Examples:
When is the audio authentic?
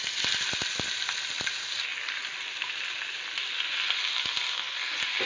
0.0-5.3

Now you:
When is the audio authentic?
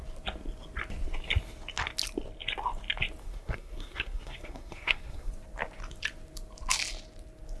0.0-3.2; 5.3-7.6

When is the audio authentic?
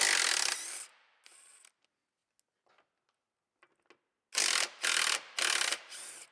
0.0-6.3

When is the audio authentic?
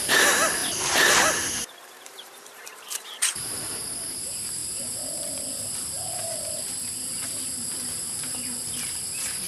0.6-1.1